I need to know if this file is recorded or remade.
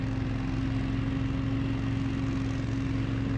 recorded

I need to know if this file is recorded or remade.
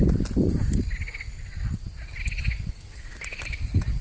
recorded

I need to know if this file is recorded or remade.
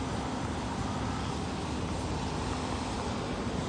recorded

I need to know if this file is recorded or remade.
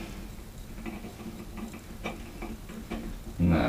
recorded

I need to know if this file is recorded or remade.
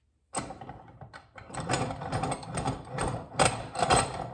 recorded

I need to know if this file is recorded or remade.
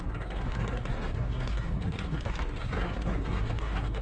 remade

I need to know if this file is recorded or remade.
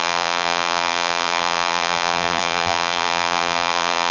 remade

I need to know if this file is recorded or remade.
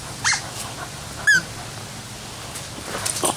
recorded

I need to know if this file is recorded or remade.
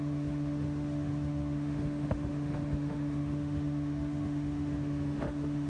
remade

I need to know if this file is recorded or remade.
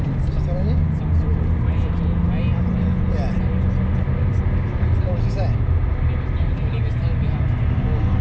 recorded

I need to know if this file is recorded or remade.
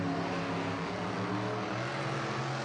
recorded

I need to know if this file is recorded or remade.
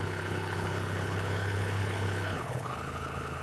remade